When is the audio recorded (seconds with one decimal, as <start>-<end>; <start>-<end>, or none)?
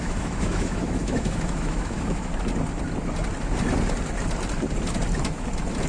2.3-5.9